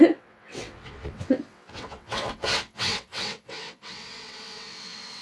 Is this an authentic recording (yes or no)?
no